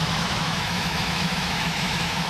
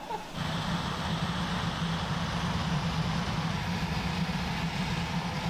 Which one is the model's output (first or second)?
first